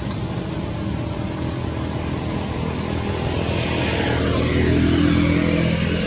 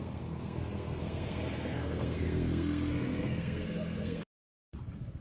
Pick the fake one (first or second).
second